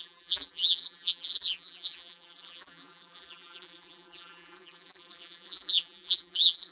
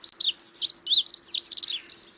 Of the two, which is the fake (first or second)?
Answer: first